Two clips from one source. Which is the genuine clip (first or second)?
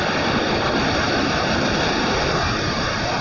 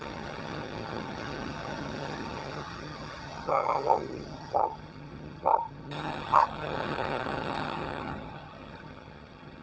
first